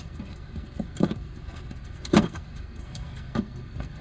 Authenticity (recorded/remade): remade